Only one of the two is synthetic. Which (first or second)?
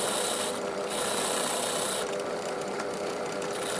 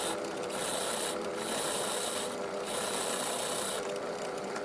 first